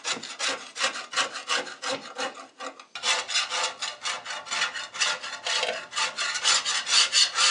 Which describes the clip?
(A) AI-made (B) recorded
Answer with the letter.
B